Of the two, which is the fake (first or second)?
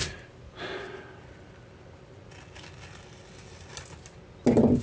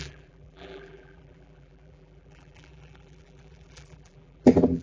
second